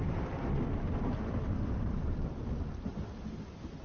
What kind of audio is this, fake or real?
real